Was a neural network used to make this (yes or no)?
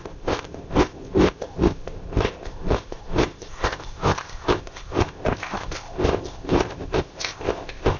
yes